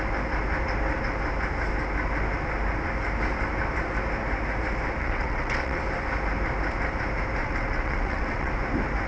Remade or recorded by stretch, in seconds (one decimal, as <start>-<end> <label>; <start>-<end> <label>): 0.0-5.0 recorded; 5.0-5.8 remade; 5.8-7.4 recorded; 7.4-8.5 remade; 8.5-9.1 recorded